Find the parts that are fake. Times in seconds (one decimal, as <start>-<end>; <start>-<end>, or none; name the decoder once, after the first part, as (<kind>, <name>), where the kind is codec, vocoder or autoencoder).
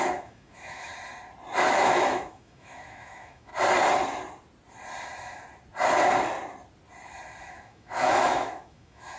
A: 0.0-0.9 (autoencoder, DAC-VAE); 1.7-3.5; 7.4-9.2